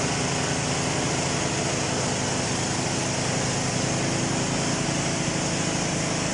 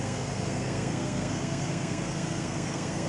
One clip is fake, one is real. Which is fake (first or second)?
second